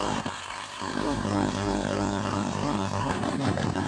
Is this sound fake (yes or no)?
yes